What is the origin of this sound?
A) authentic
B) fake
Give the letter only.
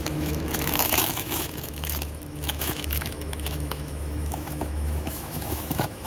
B